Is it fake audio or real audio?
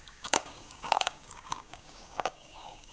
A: fake